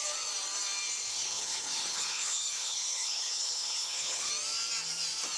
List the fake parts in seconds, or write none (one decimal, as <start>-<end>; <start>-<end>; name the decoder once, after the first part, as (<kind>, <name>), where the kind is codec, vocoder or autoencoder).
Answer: 1.1-4.3 (codec, HILCodec)